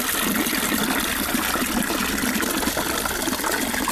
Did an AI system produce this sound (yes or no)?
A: no